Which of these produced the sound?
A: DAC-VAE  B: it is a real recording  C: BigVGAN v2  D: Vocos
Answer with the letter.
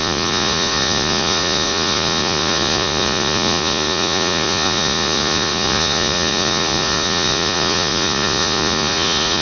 D